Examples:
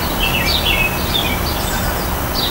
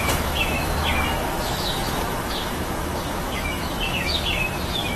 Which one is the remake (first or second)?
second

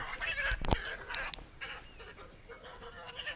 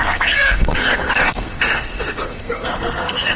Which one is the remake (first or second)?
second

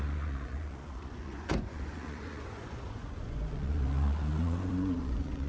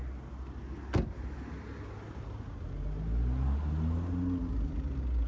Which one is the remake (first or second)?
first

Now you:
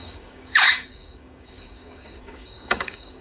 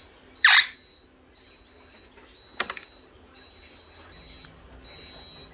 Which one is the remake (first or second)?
first